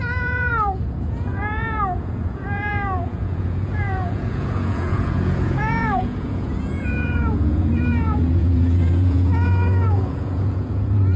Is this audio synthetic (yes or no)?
yes